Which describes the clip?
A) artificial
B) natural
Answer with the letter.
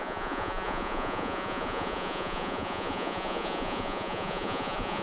A